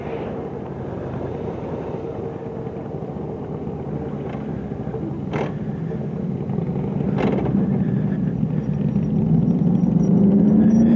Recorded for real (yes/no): yes